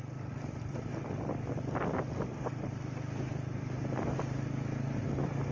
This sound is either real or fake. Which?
real